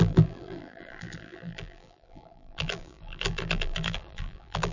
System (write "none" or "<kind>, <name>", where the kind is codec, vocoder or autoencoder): vocoder, BigVGAN v2